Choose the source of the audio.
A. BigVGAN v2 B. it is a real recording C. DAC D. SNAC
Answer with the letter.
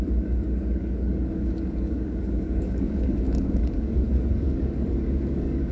C